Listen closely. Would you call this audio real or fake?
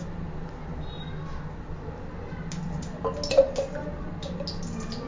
real